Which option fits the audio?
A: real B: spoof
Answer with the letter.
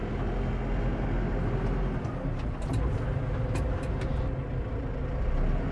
A